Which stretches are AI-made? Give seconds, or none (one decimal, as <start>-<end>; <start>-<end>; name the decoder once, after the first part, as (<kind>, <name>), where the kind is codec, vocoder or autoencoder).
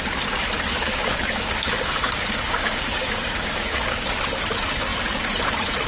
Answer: 0.7-4.2 (codec, DAC)